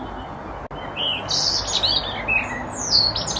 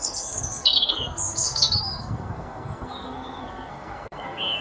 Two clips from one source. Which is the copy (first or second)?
second